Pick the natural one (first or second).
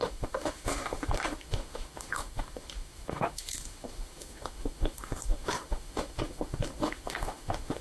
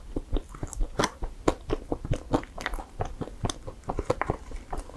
second